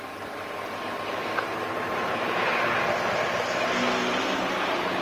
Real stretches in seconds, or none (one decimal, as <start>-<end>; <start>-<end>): 0.0-1.9; 2.5-4.0